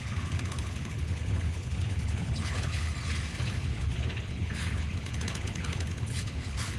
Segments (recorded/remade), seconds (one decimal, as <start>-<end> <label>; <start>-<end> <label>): 0.0-2.9 remade; 2.9-3.4 recorded; 3.4-6.8 remade